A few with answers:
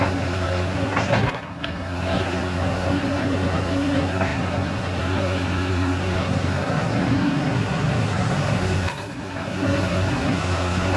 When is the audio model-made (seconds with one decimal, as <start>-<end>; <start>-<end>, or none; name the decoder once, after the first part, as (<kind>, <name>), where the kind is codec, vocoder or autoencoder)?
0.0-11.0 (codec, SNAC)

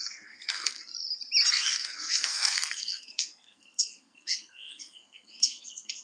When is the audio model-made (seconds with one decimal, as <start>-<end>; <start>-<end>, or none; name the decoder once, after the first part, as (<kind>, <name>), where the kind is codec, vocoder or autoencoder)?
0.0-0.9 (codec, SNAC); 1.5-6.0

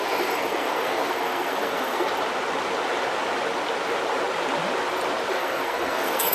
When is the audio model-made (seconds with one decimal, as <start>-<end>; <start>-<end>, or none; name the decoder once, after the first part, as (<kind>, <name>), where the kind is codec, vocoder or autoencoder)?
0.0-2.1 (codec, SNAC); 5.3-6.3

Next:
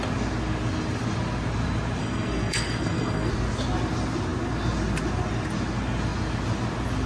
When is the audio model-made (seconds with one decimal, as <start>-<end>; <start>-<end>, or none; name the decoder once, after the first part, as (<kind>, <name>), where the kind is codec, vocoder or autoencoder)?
2.0-3.3 (codec, SNAC)

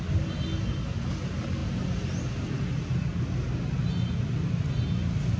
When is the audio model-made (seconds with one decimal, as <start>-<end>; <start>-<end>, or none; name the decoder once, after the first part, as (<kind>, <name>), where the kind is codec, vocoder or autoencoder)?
none

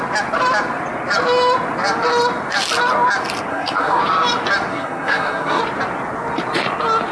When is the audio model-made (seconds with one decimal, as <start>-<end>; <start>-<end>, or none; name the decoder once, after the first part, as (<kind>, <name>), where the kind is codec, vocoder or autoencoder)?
3.5-4.0 (codec, SNAC); 4.7-5.6